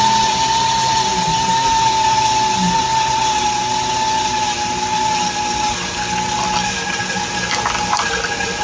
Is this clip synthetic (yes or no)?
no